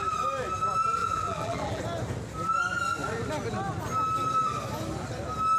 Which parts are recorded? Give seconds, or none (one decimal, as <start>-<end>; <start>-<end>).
0.0-1.0; 1.8-5.6